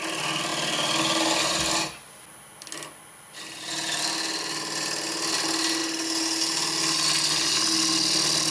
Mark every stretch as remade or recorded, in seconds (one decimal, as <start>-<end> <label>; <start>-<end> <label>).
0.0-8.5 recorded